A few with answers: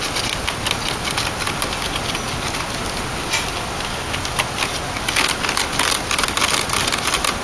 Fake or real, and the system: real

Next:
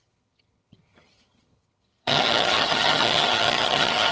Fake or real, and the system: fake, vocoder, HiFi-GAN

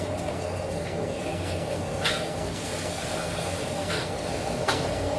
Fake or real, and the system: fake, codec, SNAC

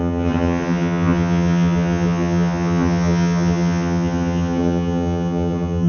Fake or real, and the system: fake, vocoder, HiFi-GAN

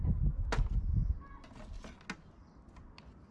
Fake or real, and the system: real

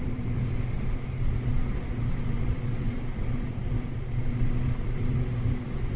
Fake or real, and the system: fake, vocoder, Vocos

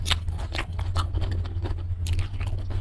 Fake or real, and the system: real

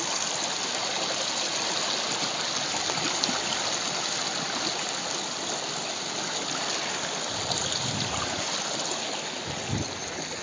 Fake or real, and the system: real